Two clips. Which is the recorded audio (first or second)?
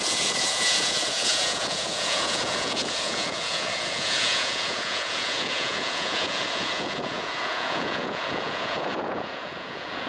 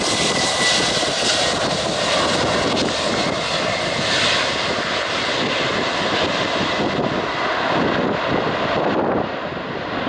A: second